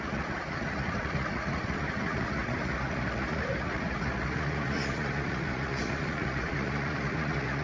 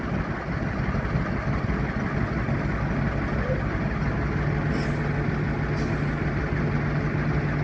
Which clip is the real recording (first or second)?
second